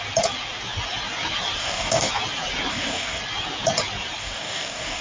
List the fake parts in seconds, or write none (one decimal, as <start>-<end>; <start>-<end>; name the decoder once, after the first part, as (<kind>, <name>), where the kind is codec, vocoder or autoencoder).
1.6-2.1 (codec, DAC); 2.7-3.2; 4.2-5.0